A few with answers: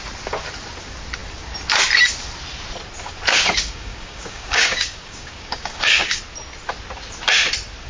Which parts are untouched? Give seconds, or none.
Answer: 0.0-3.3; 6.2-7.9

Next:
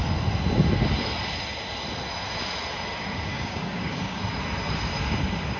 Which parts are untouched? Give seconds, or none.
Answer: 0.0-3.3; 4.2-5.6

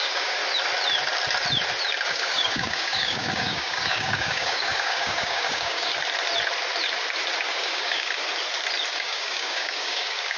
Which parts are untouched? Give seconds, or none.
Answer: 0.4-2.1; 5.9-7.4; 8.2-8.9